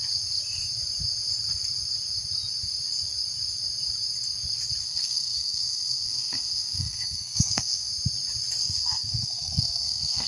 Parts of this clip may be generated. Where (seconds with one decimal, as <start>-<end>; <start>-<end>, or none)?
4.8-7.9; 8.6-10.3